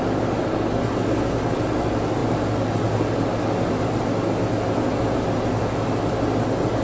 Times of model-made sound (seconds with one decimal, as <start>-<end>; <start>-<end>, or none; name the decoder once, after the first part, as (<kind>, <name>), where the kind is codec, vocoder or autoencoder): none